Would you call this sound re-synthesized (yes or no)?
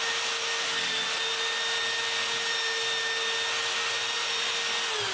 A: no